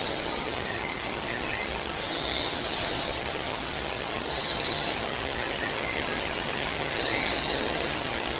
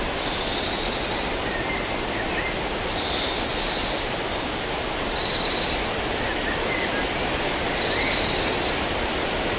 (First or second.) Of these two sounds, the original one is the second